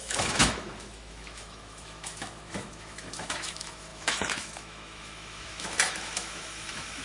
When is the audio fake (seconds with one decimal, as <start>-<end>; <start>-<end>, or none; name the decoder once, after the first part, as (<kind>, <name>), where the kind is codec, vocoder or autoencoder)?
0.0-7.0 (autoencoder, DAC-VAE)